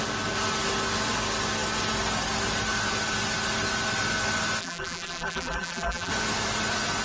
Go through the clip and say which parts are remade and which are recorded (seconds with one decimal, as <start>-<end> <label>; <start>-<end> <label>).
0.0-4.6 recorded; 4.6-6.1 remade; 6.1-7.0 recorded